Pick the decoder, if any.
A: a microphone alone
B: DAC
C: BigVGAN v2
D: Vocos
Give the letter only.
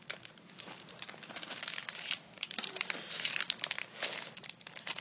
A